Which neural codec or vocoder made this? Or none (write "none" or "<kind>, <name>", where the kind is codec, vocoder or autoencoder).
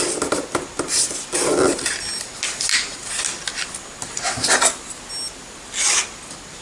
none